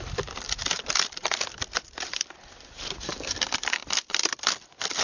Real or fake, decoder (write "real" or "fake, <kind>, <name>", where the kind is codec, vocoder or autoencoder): real